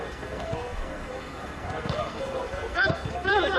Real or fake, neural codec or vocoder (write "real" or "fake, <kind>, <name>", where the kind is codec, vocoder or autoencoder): fake, codec, SNAC